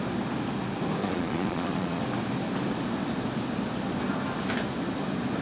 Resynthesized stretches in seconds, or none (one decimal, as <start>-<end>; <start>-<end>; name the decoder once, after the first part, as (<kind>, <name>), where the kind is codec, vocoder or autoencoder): 1.0-2.0 (vocoder, Vocos)